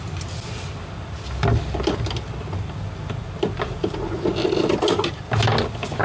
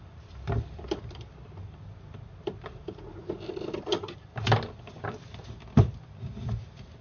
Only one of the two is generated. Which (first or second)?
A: second